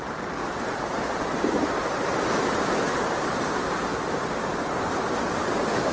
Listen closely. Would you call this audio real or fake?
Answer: real